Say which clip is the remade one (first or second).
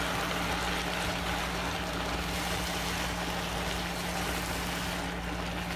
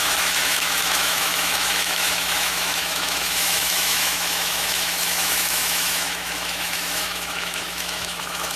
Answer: second